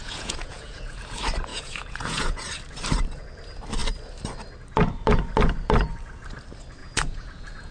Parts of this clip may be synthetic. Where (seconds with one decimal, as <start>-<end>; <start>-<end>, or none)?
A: 0.0-1.0; 1.5-2.4; 6.8-7.7